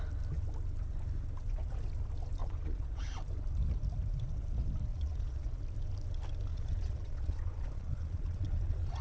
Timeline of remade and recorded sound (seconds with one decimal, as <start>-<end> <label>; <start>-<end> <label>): 0.0-2.4 recorded; 2.4-3.0 remade; 3.0-4.9 recorded; 4.9-5.6 remade; 5.6-6.5 recorded; 6.5-9.0 remade

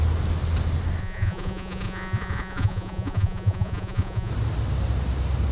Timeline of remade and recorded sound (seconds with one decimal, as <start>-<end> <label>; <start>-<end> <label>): 0.0-1.0 recorded; 1.0-4.3 remade; 4.3-5.5 recorded

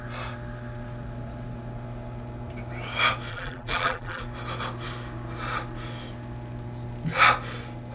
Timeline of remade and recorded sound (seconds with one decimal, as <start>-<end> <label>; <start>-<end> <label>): 0.0-3.3 recorded; 3.3-4.2 remade; 4.2-7.9 recorded

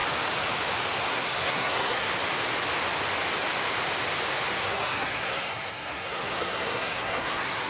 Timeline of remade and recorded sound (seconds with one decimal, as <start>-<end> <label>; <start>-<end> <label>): 0.0-1.1 recorded; 1.1-2.1 remade; 2.1-4.5 recorded; 4.5-7.7 remade

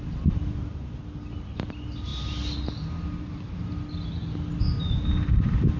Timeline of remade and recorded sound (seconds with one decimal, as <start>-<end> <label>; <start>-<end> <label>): 0.0-5.8 recorded

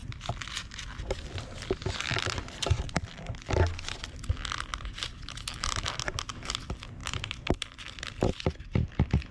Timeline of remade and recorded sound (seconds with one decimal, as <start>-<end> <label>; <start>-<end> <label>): 0.0-4.7 recorded; 4.7-5.4 remade; 5.4-7.0 recorded; 7.0-8.9 remade; 8.9-9.3 recorded

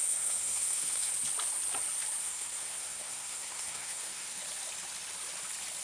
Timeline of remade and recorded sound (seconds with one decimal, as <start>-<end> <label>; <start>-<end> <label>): 0.0-1.1 remade; 1.1-2.2 recorded; 2.2-4.4 remade; 4.4-5.8 recorded

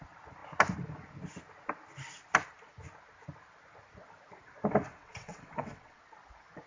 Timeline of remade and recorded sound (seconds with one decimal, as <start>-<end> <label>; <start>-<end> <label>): 0.0-4.9 recorded; 4.9-6.0 remade; 6.0-6.7 recorded